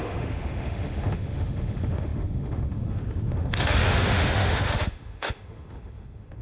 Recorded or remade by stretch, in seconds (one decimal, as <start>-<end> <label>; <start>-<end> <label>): 0.0-6.4 remade